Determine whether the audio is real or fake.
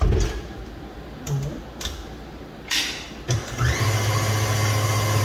real